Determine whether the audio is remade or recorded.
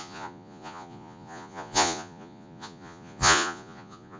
remade